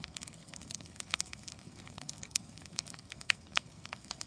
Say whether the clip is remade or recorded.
remade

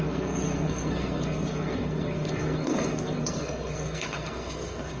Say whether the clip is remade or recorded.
remade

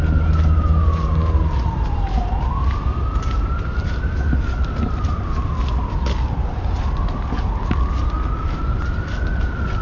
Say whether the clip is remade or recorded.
recorded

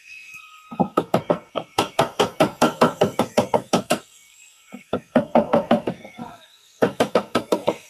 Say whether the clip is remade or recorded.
remade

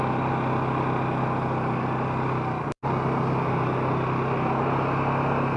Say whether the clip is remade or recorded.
recorded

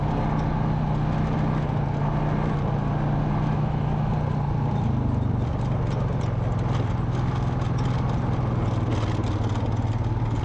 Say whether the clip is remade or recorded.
recorded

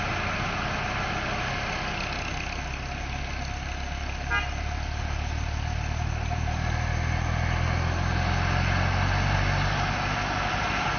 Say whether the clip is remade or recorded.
recorded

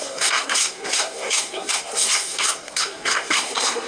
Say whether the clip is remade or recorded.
remade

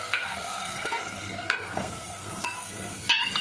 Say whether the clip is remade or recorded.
remade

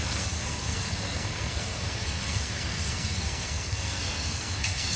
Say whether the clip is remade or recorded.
remade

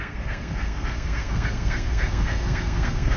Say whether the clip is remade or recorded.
remade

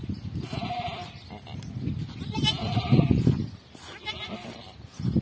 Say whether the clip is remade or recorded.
recorded